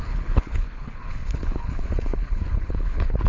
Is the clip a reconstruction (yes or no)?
yes